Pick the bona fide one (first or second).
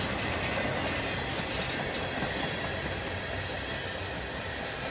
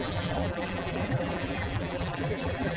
first